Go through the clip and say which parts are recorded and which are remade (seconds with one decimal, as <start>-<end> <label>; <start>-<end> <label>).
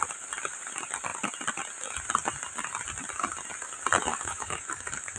0.0-4.1 recorded; 4.1-5.2 remade